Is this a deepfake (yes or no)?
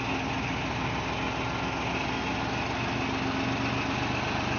no